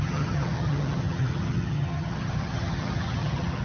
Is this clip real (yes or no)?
no